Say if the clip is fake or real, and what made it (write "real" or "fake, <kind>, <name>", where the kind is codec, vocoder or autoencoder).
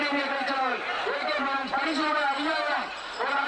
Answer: real